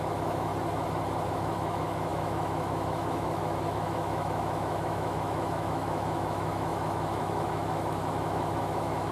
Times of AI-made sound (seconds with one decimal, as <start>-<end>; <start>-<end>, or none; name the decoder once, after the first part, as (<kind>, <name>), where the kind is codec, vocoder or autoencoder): 0.0-0.5 (autoencoder, DAC-VAE); 1.3-9.1